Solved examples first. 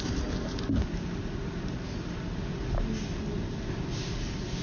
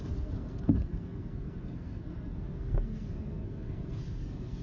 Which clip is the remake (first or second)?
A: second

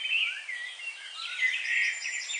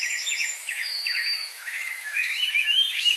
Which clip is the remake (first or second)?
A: second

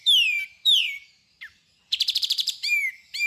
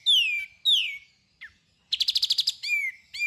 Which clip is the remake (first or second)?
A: first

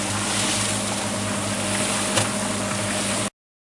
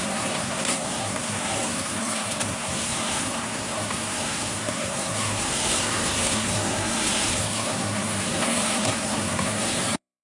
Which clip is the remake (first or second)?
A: second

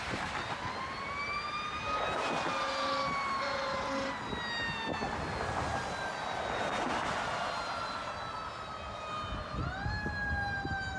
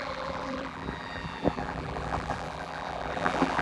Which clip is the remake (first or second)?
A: second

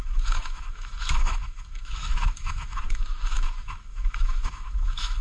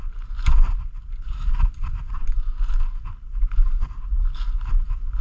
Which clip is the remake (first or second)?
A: first